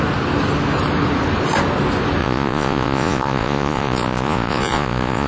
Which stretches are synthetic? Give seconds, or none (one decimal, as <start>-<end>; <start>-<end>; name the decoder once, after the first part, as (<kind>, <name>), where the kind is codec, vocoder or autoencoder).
2.2-5.3 (vocoder, Vocos)